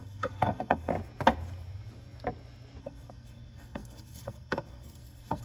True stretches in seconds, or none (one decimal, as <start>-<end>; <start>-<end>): 0.9-2.8